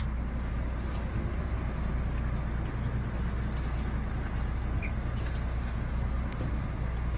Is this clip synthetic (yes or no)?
no